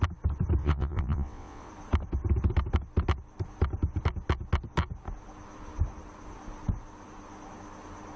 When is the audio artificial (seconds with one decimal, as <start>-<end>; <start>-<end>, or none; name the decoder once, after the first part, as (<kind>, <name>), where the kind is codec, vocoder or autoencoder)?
0.6-1.7 (vocoder, WaveNeXt)